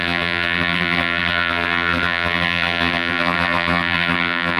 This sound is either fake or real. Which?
fake